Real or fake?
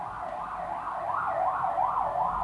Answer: real